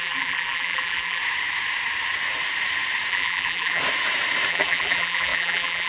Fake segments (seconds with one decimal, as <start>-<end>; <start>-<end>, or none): 0.0-1.2; 3.1-3.8; 4.5-5.9